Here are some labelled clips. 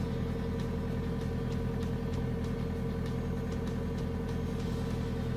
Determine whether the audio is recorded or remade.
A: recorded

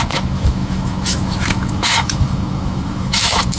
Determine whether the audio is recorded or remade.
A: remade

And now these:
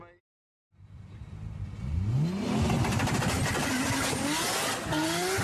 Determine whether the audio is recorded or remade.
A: recorded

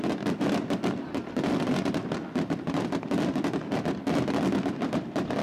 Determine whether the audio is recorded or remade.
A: recorded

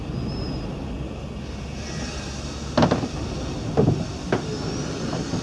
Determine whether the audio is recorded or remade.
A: recorded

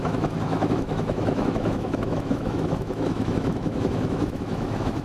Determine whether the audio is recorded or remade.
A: remade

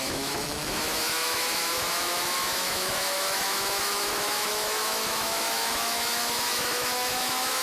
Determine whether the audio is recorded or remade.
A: remade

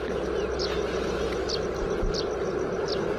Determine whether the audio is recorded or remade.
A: recorded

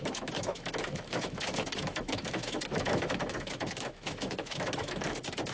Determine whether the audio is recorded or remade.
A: remade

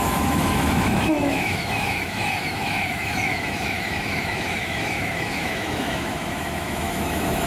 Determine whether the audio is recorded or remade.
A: remade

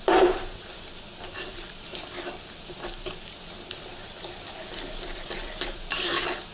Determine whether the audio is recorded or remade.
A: recorded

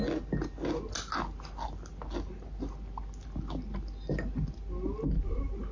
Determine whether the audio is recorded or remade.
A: recorded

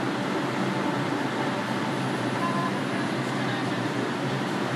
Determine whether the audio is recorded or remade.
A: recorded